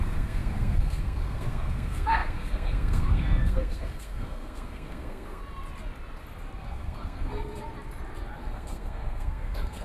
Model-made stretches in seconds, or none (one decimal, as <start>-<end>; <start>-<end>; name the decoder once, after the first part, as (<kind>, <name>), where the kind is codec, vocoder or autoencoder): 0.0-5.4 (codec, SNAC); 6.6-7.6; 8.4-9.8